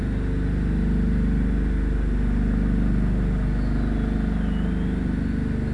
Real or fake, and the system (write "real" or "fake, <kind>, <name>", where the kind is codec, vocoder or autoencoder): real